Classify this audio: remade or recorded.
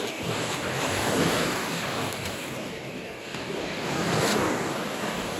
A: remade